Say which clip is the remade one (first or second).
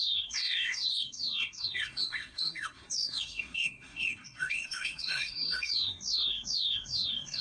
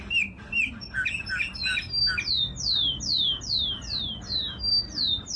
first